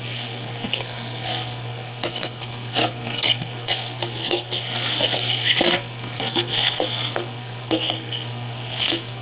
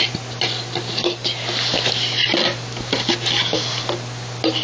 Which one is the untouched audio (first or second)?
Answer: second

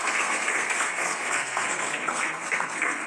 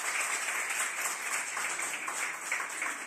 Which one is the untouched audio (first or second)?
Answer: second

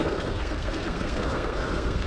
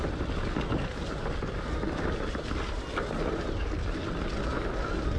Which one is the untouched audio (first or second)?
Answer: second